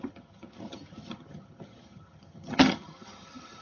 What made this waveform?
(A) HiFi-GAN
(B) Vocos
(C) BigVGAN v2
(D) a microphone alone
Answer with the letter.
A